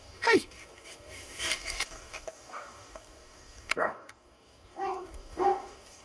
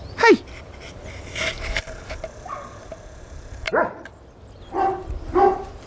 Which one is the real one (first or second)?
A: second